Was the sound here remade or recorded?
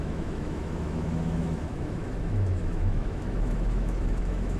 remade